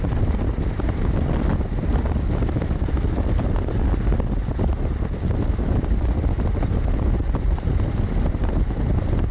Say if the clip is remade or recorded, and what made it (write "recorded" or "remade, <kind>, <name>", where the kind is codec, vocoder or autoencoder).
recorded